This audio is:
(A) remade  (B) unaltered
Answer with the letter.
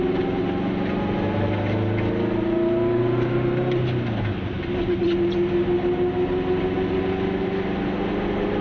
B